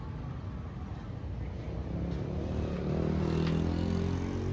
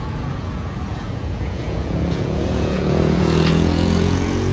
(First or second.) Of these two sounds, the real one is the first